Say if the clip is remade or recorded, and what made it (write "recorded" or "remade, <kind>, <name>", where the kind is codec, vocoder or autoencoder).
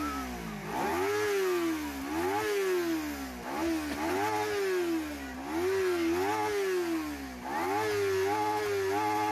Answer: recorded